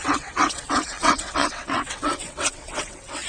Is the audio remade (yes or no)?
yes